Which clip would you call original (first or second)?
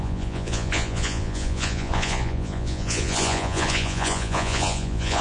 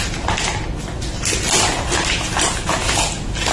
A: second